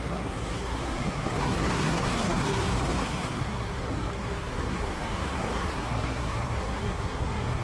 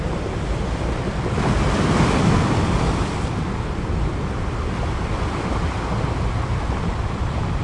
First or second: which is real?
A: second